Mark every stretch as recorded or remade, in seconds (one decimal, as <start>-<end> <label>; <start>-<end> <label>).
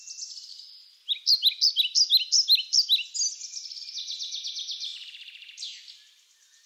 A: 0.0-6.7 recorded